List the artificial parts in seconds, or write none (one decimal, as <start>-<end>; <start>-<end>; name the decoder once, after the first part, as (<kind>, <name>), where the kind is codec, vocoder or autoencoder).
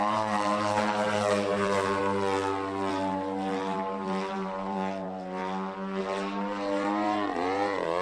0.0-2.0 (vocoder, BigVGAN v2); 2.9-5.4; 6.0-8.0